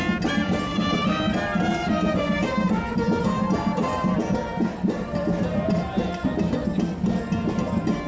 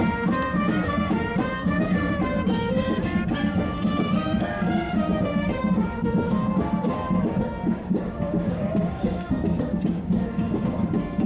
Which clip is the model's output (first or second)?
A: second